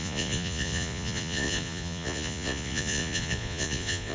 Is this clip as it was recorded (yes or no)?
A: no